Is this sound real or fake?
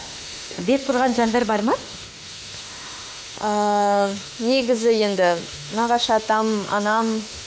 fake